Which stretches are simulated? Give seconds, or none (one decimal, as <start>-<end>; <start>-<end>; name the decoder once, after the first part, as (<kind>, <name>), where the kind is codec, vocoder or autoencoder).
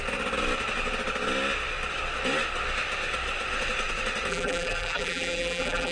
4.3-5.9 (vocoder, BigVGAN v2)